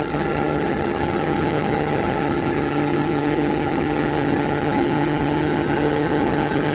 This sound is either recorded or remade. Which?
remade